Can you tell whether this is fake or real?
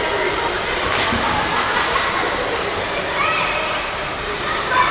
real